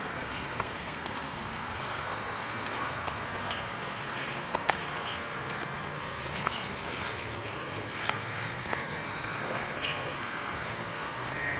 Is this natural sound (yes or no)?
no